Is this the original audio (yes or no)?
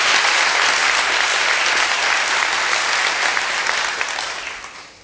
yes